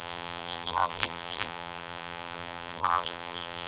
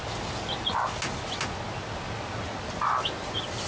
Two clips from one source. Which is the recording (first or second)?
second